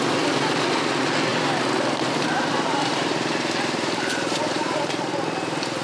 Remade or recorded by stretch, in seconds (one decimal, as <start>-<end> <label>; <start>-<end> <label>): 0.0-1.3 recorded; 1.3-4.8 remade; 4.8-5.8 recorded